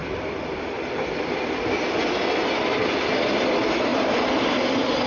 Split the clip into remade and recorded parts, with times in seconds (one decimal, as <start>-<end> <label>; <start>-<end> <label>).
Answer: 0.0-3.9 recorded; 3.9-4.6 remade; 4.6-5.1 recorded